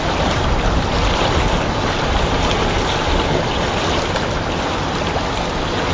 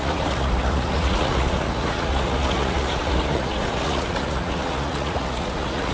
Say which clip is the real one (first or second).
first